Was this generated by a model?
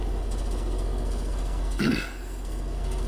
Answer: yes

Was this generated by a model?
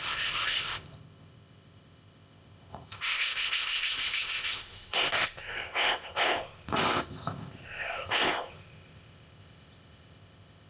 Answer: yes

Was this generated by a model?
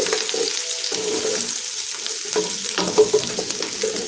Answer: no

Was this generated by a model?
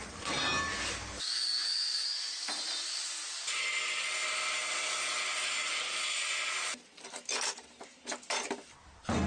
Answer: no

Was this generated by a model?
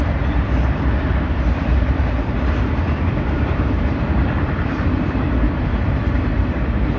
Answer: yes